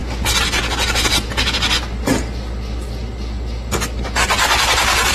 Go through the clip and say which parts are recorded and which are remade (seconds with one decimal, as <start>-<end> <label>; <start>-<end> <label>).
0.0-5.1 recorded